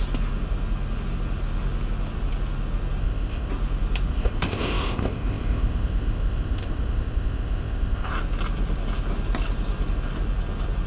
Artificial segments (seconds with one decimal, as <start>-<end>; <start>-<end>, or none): 3.0-3.5; 4.1-8.1